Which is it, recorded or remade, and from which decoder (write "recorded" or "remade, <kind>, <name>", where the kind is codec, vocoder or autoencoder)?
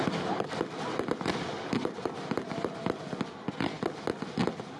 recorded